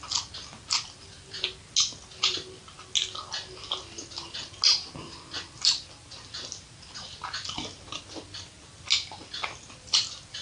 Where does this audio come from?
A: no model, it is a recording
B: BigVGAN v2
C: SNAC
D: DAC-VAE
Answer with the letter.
A